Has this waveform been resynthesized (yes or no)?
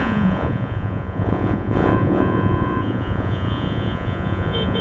yes